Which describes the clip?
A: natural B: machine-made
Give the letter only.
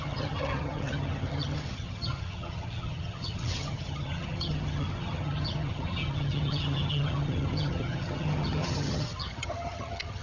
B